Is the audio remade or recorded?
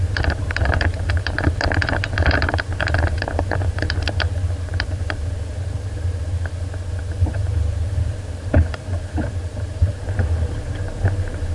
remade